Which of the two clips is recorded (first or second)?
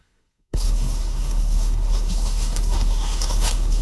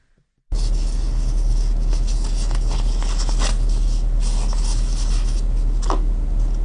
second